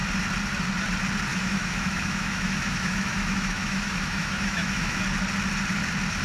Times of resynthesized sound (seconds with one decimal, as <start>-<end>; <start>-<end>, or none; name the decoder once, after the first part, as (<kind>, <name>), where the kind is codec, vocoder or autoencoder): 1.3-5.0 (autoencoder, DAC-VAE)